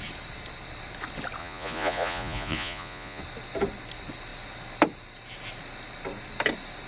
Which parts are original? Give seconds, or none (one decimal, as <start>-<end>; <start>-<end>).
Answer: 0.0-1.4; 3.2-6.9